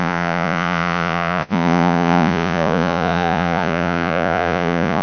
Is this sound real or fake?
fake